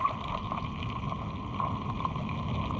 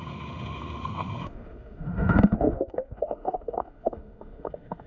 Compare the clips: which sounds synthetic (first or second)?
second